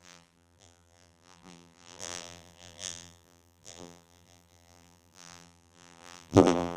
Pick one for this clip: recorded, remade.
remade